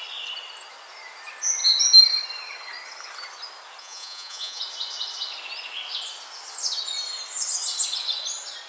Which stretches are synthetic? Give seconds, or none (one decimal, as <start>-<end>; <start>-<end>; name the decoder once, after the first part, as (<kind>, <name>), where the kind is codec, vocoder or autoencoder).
3.8-4.6 (vocoder, Vocos)